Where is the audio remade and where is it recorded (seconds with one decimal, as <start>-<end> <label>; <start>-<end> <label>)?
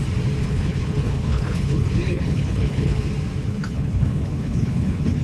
0.0-0.4 recorded; 0.4-3.1 remade; 3.1-3.5 recorded; 3.5-5.2 remade